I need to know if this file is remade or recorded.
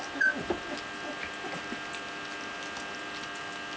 recorded